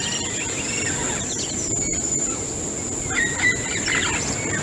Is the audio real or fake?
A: real